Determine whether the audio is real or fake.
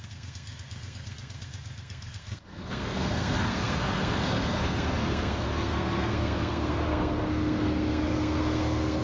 fake